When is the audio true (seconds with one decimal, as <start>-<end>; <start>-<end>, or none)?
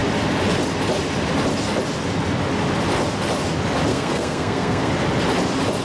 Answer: 0.0-3.9; 4.9-5.8